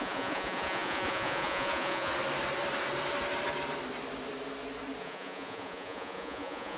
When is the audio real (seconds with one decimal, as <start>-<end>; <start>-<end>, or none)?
2.1-5.0